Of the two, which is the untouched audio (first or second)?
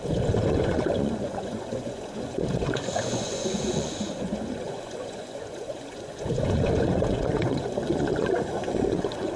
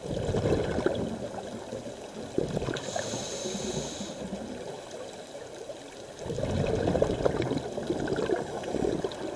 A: second